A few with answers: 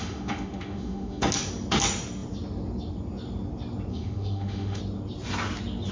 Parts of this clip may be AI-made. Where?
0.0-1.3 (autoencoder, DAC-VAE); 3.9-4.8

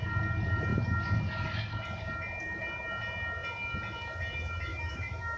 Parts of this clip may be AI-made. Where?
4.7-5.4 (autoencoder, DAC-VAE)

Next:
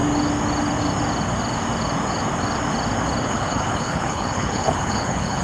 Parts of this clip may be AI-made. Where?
3.2-5.4 (codec, HILCodec)

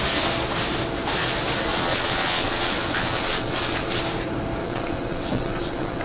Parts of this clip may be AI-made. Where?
1.7-4.0 (vocoder, WaveNeXt); 4.6-6.0